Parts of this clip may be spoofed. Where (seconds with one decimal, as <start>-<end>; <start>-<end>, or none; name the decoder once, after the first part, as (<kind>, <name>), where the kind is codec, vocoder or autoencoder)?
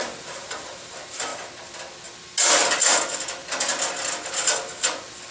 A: none